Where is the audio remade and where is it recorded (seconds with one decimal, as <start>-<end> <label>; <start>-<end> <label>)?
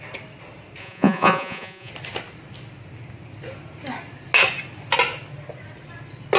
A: 0.0-0.8 recorded; 0.8-1.9 remade; 1.9-6.4 recorded